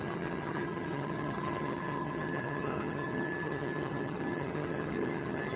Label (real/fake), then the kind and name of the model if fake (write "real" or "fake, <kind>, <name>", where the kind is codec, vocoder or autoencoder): fake, vocoder, HiFi-GAN